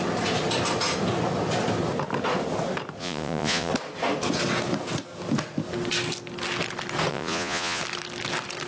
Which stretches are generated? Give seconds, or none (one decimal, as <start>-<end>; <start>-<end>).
3.0-3.7; 7.1-7.8